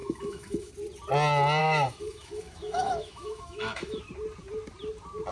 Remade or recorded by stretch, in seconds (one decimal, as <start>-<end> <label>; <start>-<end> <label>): 0.0-0.7 remade; 0.7-1.6 recorded; 1.6-4.0 remade; 4.0-5.3 recorded